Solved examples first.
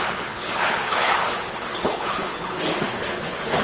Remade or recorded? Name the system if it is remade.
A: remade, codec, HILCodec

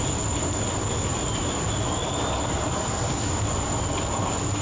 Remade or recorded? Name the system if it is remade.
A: recorded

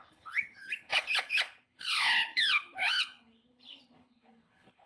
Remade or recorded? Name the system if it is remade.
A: remade, codec, HILCodec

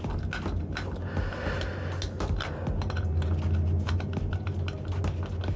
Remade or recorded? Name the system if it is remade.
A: recorded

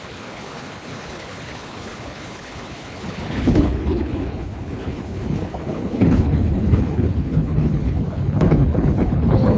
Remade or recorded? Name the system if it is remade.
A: remade, codec, HILCodec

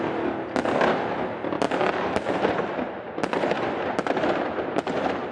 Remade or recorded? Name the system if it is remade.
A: recorded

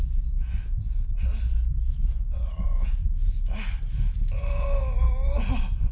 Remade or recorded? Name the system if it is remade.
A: recorded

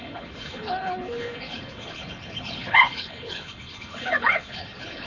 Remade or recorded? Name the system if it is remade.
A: remade, codec, HILCodec